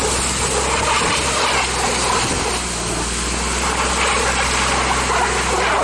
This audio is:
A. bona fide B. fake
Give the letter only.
A